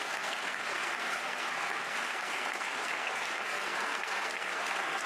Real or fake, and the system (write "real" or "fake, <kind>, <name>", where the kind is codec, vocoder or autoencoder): fake, codec, SNAC